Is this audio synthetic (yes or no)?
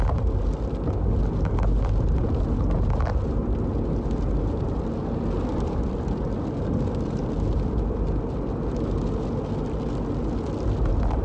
no